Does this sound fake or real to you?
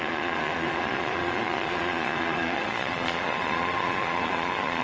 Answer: fake